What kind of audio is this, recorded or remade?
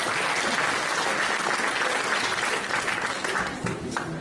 recorded